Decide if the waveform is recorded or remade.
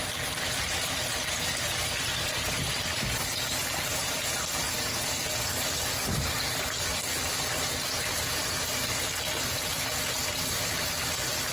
recorded